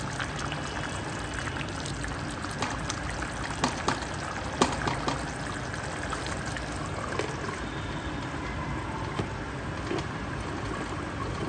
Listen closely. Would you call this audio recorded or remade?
recorded